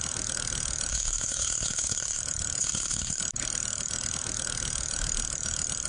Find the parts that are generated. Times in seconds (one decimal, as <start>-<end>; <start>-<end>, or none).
0.9-2.2; 2.6-3.2

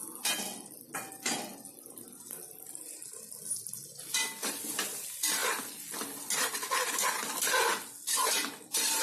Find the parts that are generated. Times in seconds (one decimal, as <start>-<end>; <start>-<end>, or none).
none

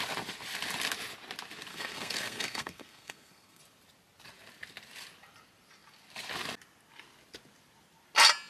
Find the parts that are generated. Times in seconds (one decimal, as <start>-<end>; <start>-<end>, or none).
1.7-3.6

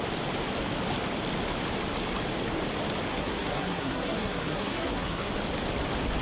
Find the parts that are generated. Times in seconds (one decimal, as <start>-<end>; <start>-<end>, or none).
3.1-5.3